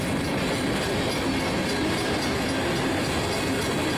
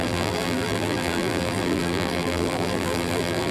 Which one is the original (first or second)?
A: first